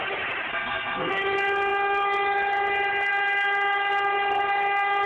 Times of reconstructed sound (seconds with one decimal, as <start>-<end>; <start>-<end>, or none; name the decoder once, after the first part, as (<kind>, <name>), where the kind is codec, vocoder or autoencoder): 0.5-1.1 (codec, SNAC)